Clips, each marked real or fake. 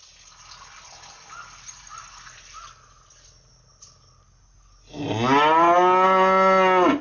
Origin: real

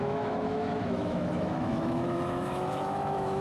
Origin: fake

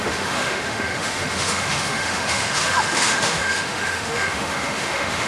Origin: fake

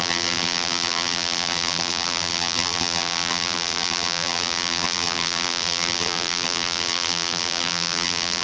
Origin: fake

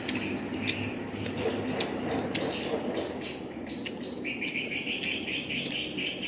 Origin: real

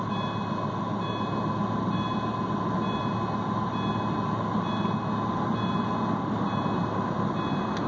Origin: real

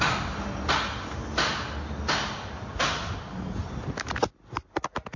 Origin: real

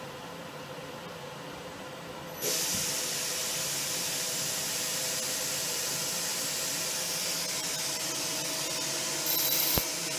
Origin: real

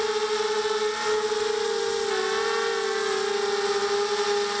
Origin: real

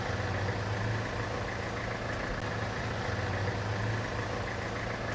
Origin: real